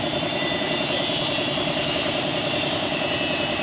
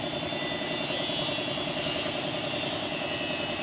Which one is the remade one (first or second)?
first